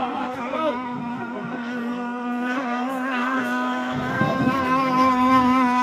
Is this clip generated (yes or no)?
yes